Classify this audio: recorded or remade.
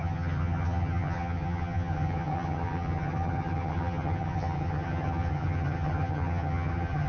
remade